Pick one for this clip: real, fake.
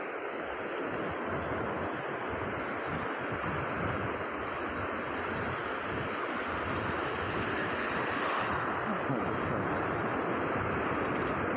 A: real